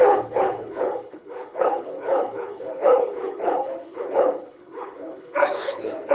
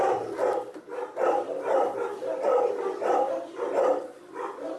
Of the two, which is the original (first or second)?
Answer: second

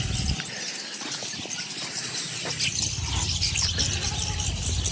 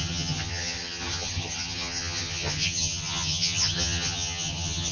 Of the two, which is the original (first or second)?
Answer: first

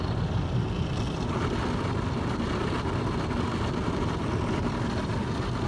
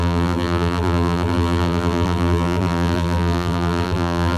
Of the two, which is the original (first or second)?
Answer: first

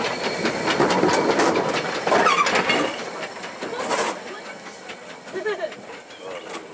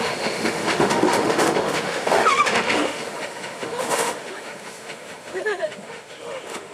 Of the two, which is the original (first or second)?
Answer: first